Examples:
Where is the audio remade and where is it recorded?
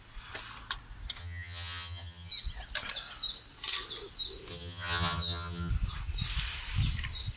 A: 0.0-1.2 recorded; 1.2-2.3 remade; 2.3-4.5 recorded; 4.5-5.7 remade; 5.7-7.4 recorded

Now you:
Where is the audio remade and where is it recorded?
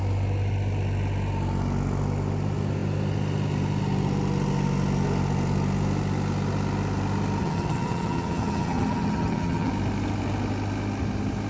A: 0.0-7.4 recorded; 7.4-9.7 remade; 9.7-11.5 recorded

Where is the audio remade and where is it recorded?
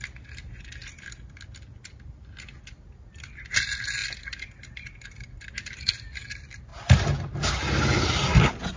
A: 0.0-8.8 recorded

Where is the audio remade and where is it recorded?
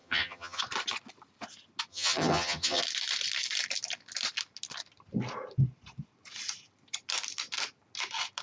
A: 0.0-0.6 remade; 0.6-1.9 recorded; 1.9-2.8 remade; 2.8-8.4 recorded